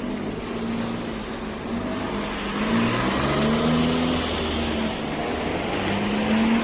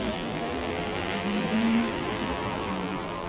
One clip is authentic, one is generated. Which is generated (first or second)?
second